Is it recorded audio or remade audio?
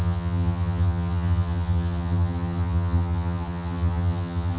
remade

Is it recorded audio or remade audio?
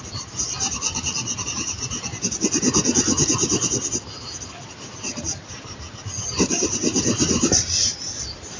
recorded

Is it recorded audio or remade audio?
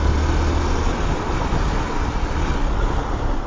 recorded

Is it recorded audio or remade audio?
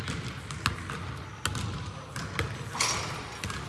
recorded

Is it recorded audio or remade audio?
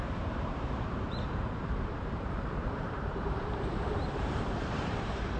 remade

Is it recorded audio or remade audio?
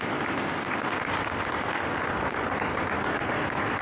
recorded